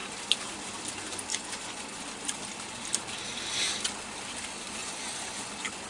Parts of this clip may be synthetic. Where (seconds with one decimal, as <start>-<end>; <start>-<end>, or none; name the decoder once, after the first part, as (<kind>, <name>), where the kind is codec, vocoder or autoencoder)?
1.3-2.0 (vocoder, Vocos); 4.8-5.5